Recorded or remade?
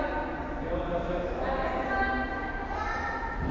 recorded